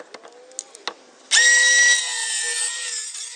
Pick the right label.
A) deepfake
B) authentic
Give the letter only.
B